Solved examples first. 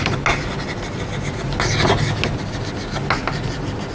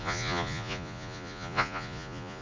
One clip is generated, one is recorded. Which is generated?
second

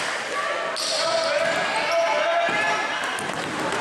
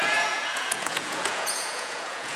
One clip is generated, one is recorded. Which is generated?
second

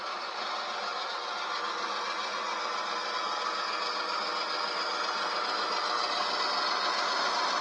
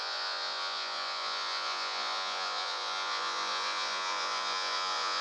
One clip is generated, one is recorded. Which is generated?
second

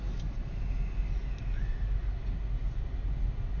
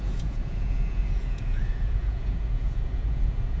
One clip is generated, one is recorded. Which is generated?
second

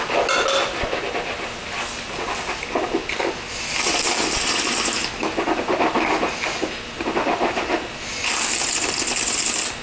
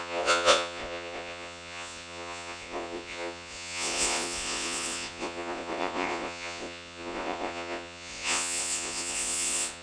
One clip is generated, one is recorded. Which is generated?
second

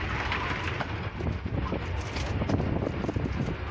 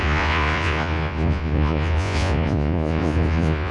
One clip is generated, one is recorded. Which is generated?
second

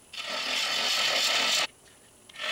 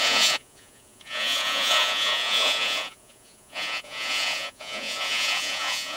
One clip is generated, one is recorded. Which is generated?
second